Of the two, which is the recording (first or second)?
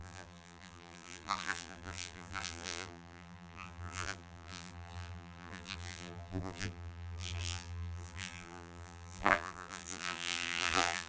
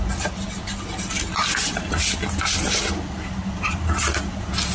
second